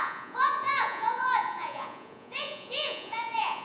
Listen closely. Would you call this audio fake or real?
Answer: fake